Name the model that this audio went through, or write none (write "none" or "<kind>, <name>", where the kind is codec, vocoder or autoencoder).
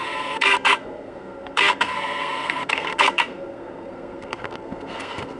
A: codec, SNAC